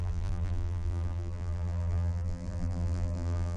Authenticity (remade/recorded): remade